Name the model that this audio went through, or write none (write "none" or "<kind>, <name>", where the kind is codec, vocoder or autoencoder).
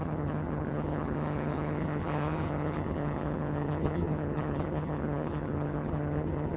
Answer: vocoder, HiFi-GAN